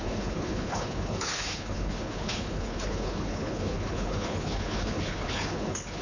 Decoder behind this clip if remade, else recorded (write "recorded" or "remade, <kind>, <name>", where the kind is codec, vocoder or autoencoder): remade, codec, HILCodec